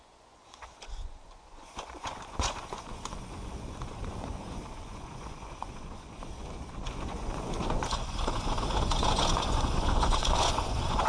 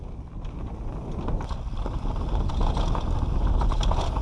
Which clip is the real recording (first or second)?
second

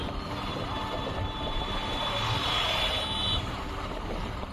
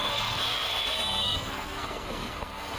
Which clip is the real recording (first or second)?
first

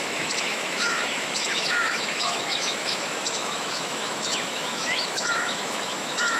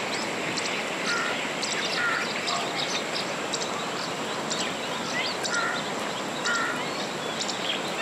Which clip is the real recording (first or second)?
second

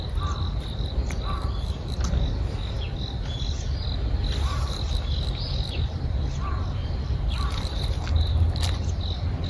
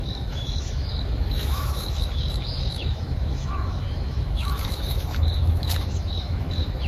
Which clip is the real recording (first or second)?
first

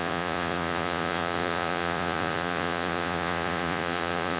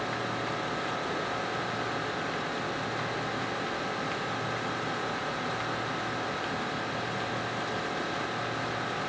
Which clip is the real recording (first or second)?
second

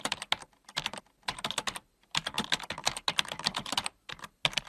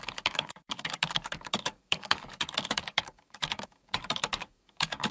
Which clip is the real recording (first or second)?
first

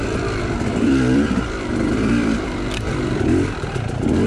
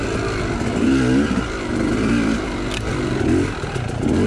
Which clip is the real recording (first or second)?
second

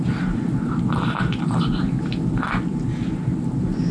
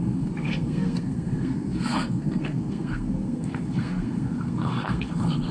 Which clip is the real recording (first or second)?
first